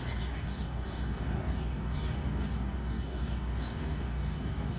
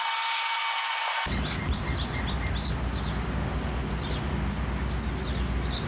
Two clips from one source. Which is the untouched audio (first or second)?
second